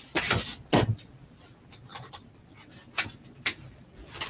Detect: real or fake real